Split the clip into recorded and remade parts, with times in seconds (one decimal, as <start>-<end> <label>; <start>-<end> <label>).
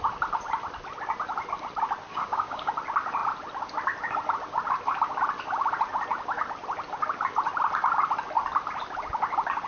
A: 0.0-2.1 recorded; 2.1-2.7 remade; 2.7-9.7 recorded